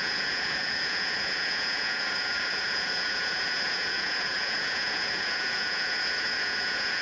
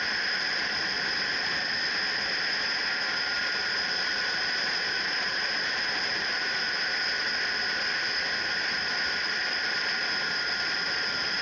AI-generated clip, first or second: first